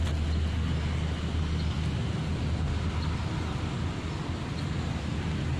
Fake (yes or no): no